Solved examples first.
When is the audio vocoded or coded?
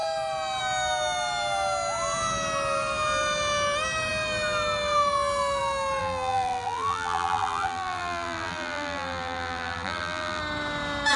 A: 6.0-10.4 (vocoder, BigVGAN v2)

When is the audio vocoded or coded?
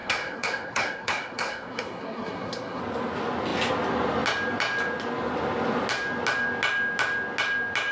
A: 0.0-2.8 (codec, SNAC)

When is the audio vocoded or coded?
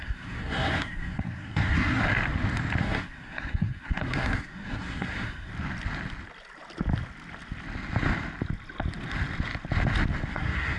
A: 0.0-2.0 (codec, SNAC); 2.8-5.5; 10.3-10.8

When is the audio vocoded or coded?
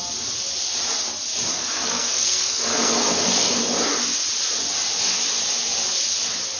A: 1.5-3.6 (codec, SNAC)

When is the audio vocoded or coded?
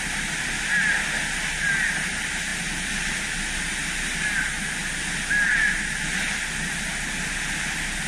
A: none